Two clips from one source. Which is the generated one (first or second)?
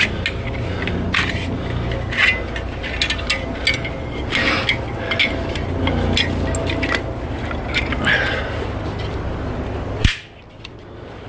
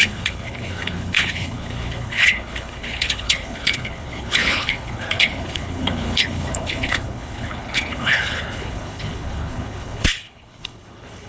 second